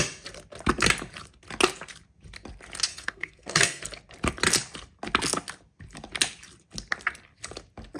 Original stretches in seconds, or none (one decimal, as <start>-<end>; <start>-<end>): 0.0-2.9; 3.8-8.0